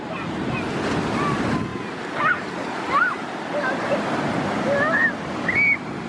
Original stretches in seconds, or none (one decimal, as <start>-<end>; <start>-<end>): 0.0-6.1